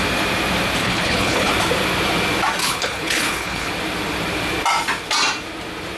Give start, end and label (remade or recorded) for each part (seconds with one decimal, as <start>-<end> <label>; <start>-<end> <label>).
0.0-0.8 recorded; 0.8-1.5 remade; 1.5-2.6 recorded; 2.6-3.7 remade; 3.7-6.0 recorded